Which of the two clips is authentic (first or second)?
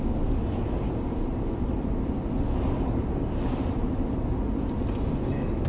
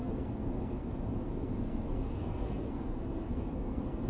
first